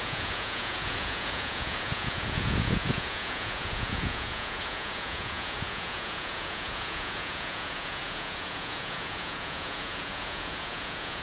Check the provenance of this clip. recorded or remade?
remade